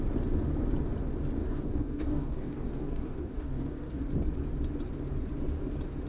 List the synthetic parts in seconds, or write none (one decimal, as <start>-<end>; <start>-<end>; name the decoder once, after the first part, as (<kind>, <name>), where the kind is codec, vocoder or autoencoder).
1.4-4.0 (codec, DAC)